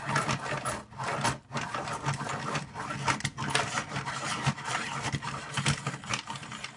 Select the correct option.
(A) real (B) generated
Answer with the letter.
A